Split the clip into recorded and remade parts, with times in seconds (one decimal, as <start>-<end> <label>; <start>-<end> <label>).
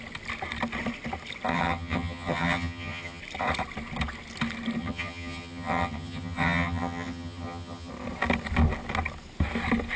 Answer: 0.0-1.5 recorded; 1.5-3.2 remade; 3.2-4.8 recorded; 4.8-7.9 remade; 7.9-10.0 recorded